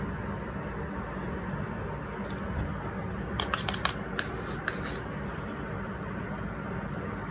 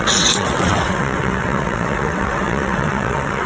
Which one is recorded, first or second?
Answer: first